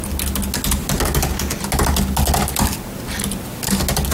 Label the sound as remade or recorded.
recorded